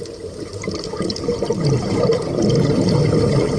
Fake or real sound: fake